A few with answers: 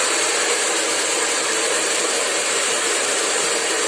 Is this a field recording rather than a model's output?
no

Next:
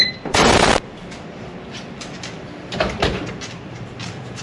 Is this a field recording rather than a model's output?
no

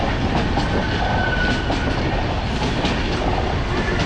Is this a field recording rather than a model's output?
yes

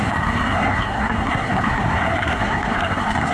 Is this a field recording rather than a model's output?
no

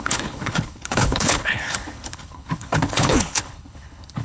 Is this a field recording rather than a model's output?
no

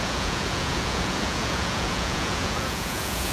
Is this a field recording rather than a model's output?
no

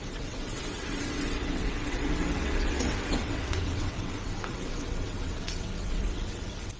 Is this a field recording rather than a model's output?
no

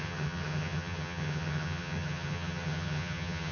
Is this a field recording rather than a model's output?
no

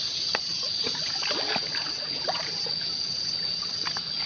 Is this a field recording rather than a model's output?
yes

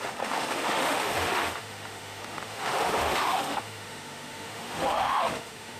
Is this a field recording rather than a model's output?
no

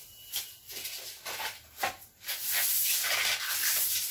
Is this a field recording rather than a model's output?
yes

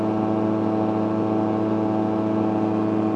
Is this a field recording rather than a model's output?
yes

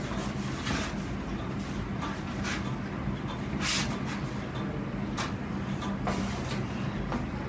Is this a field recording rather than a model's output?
yes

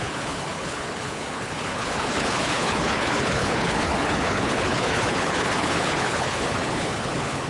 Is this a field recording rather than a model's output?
no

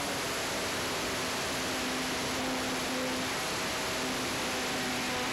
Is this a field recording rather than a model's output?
yes